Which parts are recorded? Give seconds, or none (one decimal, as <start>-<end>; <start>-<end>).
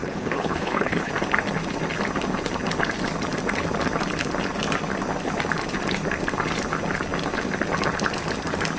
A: 1.1-8.8